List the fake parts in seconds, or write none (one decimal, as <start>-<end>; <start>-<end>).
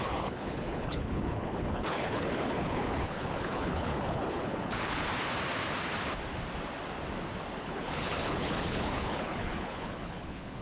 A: 0.0-5.1; 7.6-10.6